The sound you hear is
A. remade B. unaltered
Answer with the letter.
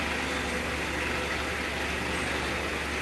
B